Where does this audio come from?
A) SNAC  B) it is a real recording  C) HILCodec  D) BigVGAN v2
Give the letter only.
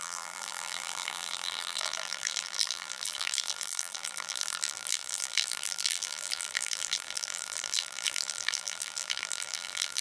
D